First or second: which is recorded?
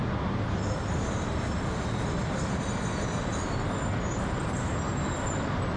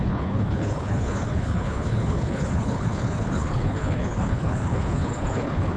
first